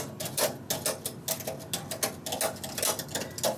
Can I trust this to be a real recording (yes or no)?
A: yes